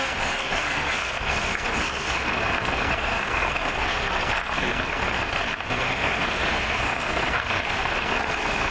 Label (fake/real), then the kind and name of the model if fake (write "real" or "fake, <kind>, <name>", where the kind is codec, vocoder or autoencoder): fake, codec, SNAC